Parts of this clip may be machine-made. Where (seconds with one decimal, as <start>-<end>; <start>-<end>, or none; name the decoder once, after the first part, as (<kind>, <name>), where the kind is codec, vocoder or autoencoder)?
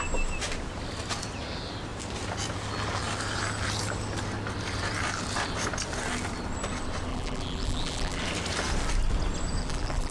7.1-8.2 (vocoder, BigVGAN v2); 9.6-10.1